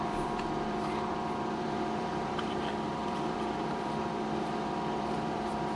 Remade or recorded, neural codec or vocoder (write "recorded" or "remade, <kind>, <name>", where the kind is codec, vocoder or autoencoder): remade, vocoder, BigVGAN v2